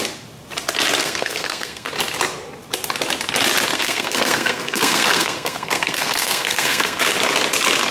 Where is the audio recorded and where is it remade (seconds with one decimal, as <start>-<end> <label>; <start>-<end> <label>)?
0.0-1.0 recorded; 1.0-1.9 remade; 1.9-3.7 recorded; 3.7-7.0 remade; 7.0-7.9 recorded